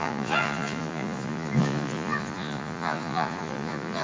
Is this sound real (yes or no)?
no